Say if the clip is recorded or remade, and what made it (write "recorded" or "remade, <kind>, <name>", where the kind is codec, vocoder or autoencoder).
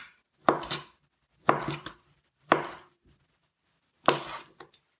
remade, vocoder, BigVGAN v2